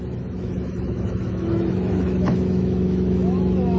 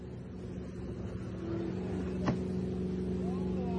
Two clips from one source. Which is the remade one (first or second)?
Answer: first